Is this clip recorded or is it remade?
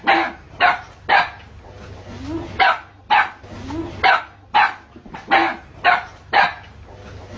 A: recorded